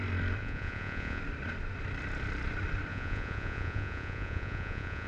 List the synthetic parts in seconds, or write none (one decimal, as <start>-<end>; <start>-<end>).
0.4-1.2; 2.9-5.1